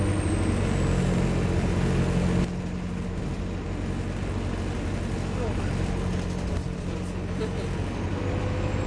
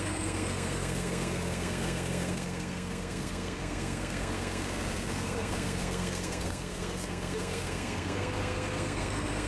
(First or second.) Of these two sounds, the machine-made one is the second